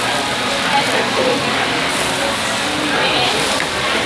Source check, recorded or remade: recorded